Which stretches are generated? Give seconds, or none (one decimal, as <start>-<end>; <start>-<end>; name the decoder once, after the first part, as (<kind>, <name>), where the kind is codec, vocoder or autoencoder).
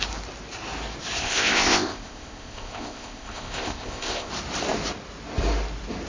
1.2-4.3 (codec, ZipCodec)